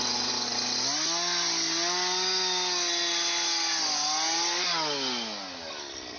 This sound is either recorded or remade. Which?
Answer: recorded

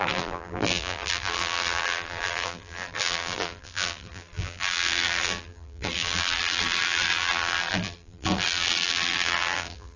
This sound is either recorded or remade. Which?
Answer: remade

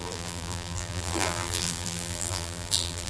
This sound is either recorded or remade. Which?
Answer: remade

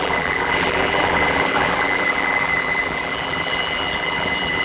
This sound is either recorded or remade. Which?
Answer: remade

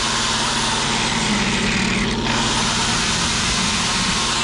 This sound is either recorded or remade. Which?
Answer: recorded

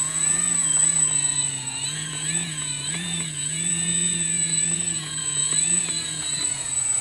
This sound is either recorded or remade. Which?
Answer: remade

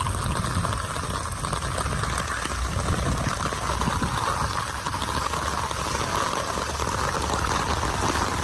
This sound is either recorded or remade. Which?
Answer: recorded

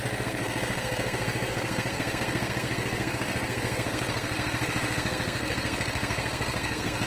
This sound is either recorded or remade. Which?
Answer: remade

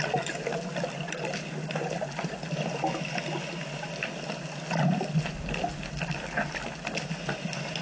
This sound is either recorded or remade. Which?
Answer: recorded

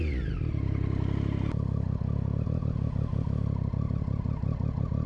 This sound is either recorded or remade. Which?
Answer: recorded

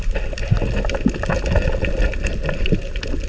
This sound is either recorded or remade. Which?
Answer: recorded